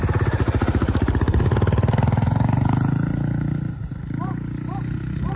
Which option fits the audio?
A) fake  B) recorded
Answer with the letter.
B